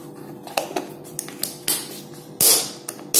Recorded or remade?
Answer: recorded